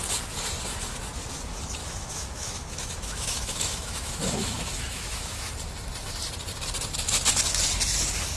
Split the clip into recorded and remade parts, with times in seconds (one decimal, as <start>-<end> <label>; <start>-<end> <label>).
0.0-1.8 recorded; 1.8-5.5 remade; 5.5-8.4 recorded